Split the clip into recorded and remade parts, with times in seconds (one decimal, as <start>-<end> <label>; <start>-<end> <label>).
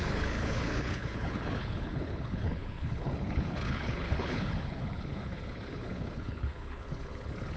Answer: 0.0-7.6 remade